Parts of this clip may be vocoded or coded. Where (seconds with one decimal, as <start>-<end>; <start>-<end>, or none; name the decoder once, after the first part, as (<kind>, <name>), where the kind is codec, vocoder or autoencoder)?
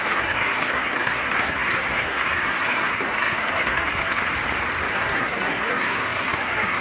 0.0-4.2 (codec, SNAC); 4.9-6.8